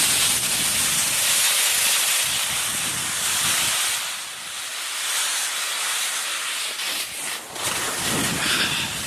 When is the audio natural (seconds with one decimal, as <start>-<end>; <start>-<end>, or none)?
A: 0.0-3.0; 3.6-9.1